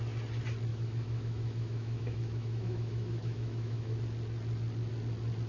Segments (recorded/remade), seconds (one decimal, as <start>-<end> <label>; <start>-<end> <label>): 0.0-0.7 recorded; 0.7-4.0 remade; 4.0-5.5 recorded